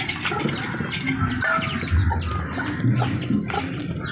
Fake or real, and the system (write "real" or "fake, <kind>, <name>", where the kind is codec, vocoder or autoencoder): real